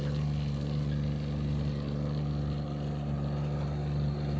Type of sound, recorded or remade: recorded